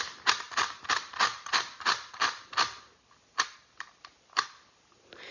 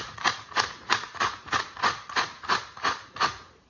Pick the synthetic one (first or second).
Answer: second